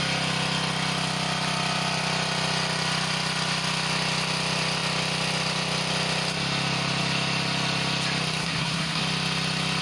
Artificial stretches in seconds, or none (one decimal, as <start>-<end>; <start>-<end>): 8.4-9.0